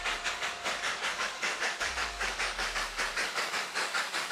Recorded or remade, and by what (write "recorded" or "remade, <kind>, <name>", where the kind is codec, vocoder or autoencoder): remade, codec, DAC